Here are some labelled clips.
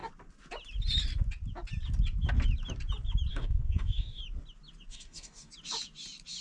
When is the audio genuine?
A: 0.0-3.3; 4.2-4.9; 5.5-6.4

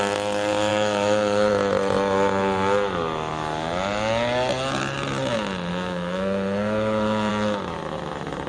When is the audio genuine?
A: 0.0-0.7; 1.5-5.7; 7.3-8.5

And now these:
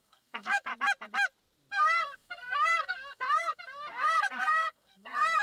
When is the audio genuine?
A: 0.7-1.7

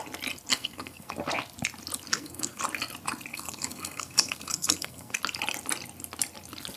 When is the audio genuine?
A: 0.0-0.5; 1.1-2.1; 2.6-3.3; 5.2-6.8

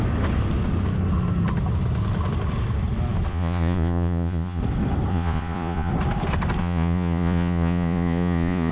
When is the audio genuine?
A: 0.0-3.3; 4.6-5.1; 5.9-6.6

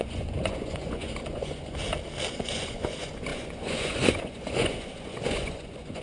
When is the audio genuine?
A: 1.8-2.3

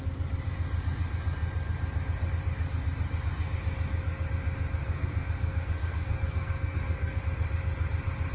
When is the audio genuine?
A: 0.0-4.8; 7.2-8.3